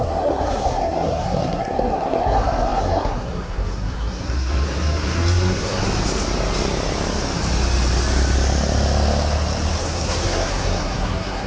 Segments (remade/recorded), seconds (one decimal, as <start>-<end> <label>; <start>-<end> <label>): 0.0-5.8 remade; 5.8-9.8 recorded; 9.8-11.5 remade